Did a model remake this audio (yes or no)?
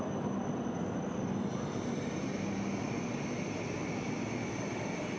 no